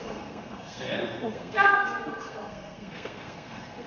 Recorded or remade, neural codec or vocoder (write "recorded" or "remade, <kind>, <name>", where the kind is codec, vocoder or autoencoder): remade, codec, SNAC